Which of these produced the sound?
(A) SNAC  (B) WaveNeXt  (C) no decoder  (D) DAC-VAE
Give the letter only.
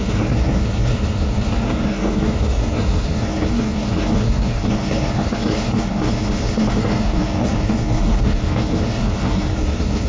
A